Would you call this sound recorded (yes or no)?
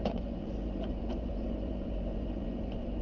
no